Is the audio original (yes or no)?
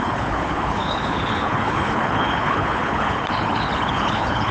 no